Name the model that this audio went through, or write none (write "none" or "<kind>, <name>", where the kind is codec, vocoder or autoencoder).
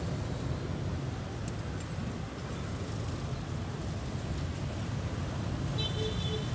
none